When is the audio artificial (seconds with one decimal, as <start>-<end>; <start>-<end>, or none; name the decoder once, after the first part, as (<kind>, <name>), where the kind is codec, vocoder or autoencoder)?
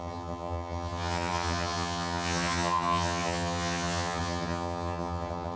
0.0-5.6 (vocoder, HiFi-GAN)